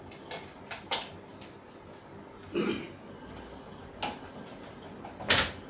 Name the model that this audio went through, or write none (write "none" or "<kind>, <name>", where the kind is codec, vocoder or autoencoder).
none